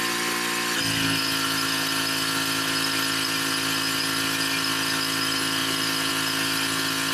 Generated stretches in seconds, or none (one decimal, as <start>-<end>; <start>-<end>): none